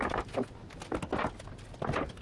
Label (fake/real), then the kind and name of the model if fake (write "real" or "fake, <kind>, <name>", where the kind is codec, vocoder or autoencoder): real